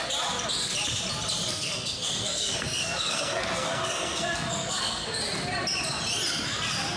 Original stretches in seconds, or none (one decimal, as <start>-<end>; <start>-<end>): 0.0-1.5; 5.2-7.0